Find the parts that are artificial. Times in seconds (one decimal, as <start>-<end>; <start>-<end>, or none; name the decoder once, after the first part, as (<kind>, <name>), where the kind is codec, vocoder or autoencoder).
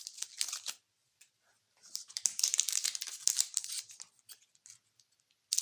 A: 1.0-4.4 (vocoder, BigVGAN v2)